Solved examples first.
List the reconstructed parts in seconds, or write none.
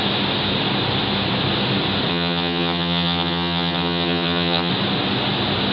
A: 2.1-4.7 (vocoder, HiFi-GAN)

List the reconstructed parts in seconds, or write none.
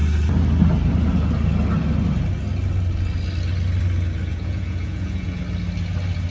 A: 4.3-5.4 (vocoder, Vocos)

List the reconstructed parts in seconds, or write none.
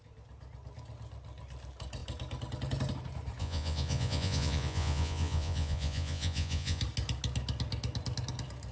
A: 3.4-6.8 (vocoder, Vocos)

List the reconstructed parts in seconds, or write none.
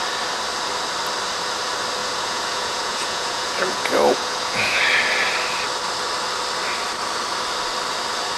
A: 2.0-4.8 (vocoder, Vocos)